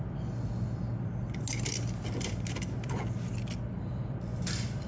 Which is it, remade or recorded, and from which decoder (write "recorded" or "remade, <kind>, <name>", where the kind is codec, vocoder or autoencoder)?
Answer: recorded